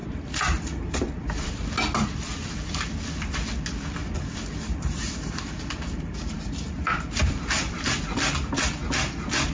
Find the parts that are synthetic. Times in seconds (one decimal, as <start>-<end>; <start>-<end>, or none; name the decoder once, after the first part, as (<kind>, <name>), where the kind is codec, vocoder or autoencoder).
0.0-1.5 (vocoder, BigVGAN v2); 4.0-8.0